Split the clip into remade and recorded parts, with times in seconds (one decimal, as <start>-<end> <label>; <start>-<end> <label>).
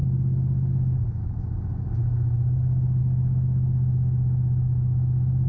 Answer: 0.0-3.0 recorded; 3.0-5.5 remade